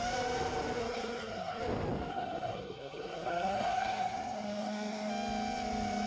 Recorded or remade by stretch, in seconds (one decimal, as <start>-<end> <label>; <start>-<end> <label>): 0.0-0.8 recorded; 0.8-1.6 remade; 1.6-2.1 recorded; 2.1-5.1 remade; 5.1-6.1 recorded